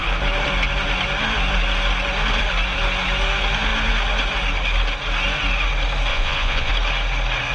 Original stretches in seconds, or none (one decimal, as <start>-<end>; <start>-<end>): 0.0-6.1; 6.7-7.5